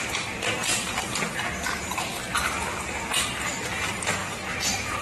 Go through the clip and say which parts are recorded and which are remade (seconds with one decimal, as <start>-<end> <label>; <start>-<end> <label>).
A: 0.0-5.0 recorded